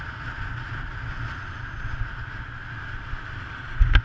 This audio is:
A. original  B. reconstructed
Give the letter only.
A